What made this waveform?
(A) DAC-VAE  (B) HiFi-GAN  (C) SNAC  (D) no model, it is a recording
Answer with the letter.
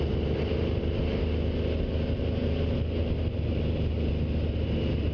D